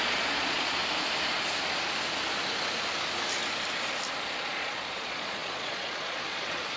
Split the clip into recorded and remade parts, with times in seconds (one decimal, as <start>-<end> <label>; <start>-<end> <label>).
0.0-0.8 remade; 0.8-4.4 recorded; 4.4-6.8 remade